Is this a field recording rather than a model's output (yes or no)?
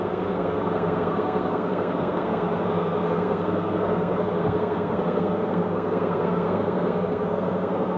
no